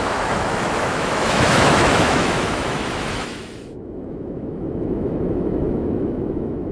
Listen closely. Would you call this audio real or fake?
fake